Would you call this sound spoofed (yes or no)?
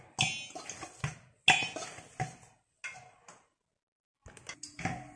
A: no